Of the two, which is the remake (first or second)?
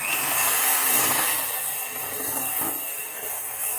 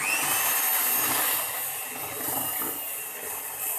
first